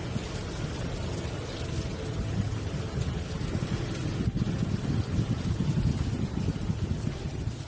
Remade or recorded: recorded